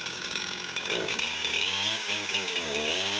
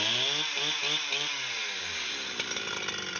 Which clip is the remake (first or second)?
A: first